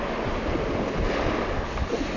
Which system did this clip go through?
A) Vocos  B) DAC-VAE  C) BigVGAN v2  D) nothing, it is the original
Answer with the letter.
D